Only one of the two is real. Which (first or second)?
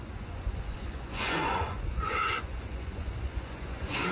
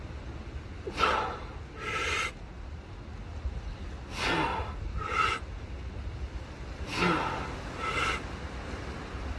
second